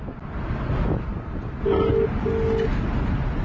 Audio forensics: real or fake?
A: real